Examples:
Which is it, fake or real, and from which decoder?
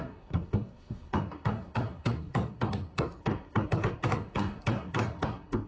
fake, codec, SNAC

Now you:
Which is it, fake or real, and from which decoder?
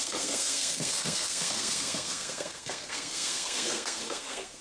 fake, codec, SNAC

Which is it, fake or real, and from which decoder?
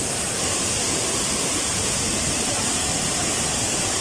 real